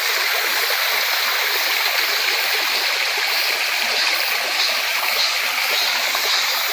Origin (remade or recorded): recorded